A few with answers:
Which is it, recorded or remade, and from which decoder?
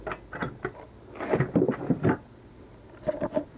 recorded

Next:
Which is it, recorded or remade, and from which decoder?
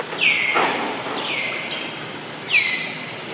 recorded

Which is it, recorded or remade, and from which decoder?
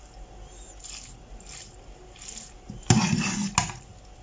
recorded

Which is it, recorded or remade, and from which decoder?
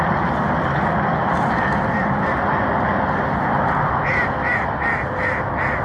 recorded